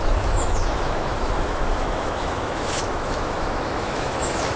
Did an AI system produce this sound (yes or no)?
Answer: yes